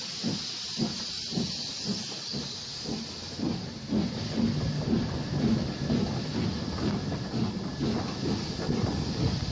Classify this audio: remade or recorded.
recorded